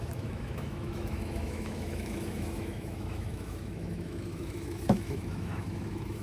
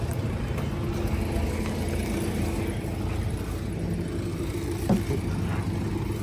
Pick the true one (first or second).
second